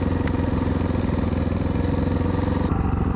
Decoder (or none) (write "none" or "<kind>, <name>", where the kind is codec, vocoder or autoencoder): none